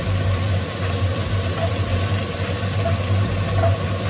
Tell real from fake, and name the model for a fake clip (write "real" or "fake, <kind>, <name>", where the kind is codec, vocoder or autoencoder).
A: real